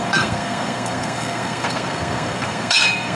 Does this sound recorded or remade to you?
remade